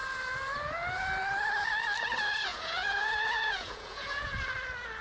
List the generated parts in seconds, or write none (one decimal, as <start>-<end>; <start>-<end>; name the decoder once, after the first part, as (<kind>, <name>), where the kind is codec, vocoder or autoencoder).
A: 2.5-4.3 (vocoder, Vocos)